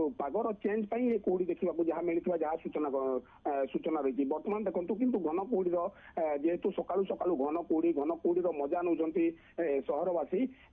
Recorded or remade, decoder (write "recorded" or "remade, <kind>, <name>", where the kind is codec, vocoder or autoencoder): recorded